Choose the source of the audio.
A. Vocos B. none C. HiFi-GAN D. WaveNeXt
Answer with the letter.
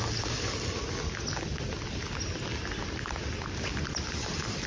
B